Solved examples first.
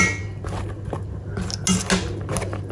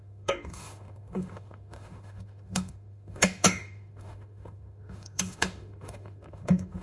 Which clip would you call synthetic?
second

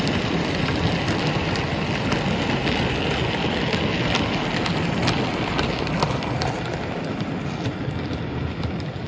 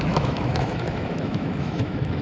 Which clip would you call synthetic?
second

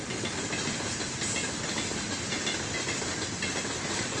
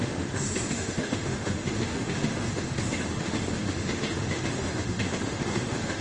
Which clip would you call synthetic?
second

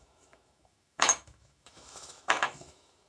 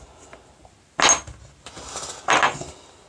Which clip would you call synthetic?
first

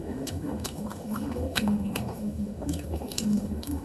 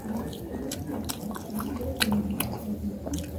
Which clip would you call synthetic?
first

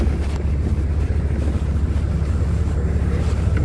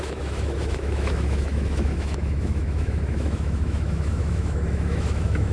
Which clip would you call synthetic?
second